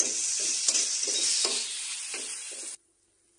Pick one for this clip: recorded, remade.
recorded